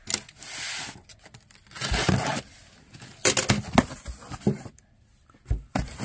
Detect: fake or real real